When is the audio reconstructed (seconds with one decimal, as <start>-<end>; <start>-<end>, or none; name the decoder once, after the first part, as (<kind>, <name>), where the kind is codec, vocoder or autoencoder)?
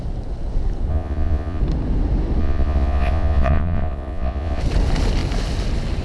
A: 0.9-1.6 (vocoder, Vocos); 2.4-4.6